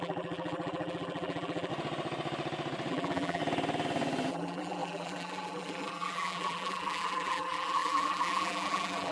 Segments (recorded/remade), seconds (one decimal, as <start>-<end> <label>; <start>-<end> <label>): 0.0-1.7 remade; 1.7-2.9 recorded; 2.9-3.4 remade; 3.4-4.3 recorded; 4.3-9.1 remade